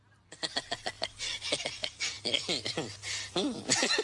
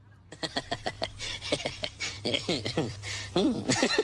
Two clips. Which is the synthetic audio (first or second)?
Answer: second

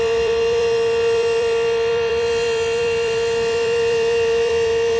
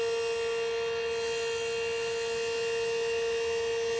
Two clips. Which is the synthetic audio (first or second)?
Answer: first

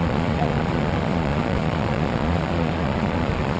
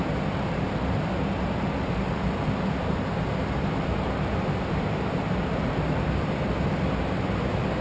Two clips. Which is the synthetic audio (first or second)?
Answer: first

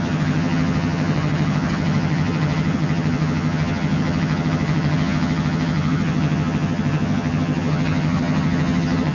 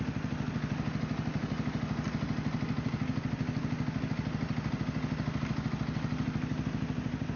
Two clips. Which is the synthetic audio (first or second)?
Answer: first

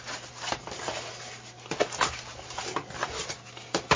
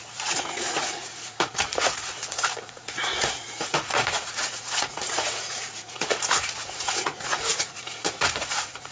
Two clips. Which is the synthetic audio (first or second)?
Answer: second